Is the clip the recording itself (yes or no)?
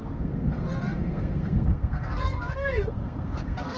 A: no